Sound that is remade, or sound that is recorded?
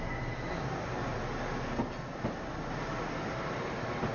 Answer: recorded